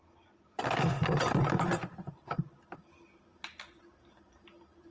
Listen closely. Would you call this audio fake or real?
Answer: real